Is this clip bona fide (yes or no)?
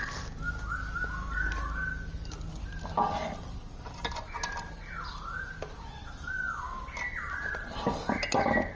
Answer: yes